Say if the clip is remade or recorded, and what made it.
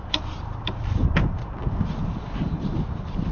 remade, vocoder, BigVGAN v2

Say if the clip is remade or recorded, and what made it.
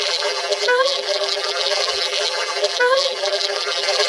remade, vocoder, BigVGAN v2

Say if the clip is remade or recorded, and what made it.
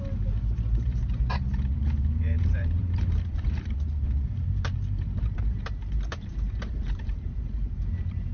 remade, vocoder, BigVGAN v2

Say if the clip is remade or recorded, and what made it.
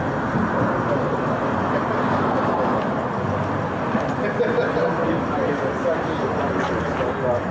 recorded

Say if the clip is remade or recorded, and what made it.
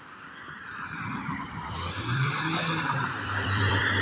remade, vocoder, BigVGAN v2